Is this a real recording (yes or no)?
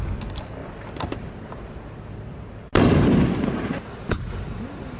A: yes